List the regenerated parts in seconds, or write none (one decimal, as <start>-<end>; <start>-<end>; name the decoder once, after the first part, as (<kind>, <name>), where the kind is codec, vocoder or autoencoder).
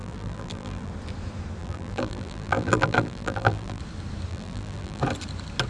0.0-0.9 (vocoder, BigVGAN v2); 1.6-3.8; 4.3-5.0